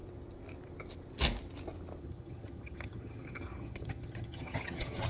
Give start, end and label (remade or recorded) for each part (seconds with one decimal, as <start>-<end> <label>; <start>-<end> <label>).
0.0-2.0 recorded; 2.0-5.1 remade